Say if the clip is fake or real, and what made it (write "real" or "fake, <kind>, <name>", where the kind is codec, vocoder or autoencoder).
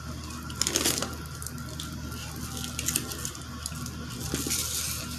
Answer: real